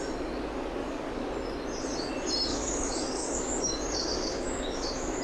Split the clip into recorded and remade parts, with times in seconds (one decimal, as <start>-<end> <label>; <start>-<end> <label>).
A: 0.0-0.8 recorded; 0.8-1.3 remade; 1.3-2.5 recorded; 2.5-5.2 remade